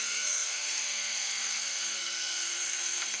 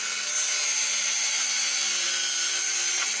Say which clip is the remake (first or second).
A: first